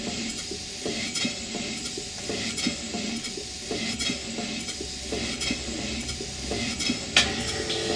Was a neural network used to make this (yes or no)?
no